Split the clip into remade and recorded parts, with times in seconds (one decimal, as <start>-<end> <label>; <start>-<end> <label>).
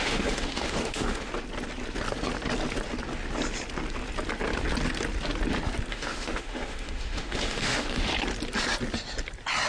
0.0-1.3 remade; 1.3-5.9 recorded; 5.9-8.1 remade; 8.1-9.7 recorded